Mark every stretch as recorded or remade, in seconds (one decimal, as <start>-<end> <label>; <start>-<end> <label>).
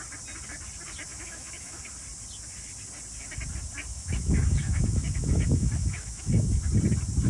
0.0-1.1 recorded; 1.1-1.8 remade; 1.8-3.9 recorded; 3.9-6.6 remade; 6.6-7.3 recorded